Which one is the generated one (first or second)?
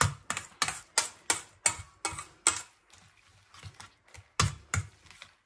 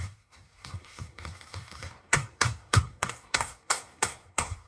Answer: second